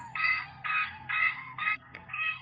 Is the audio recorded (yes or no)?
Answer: no